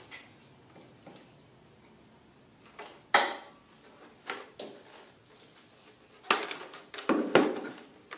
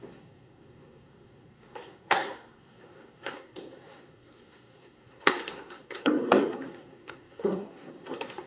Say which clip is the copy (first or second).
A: second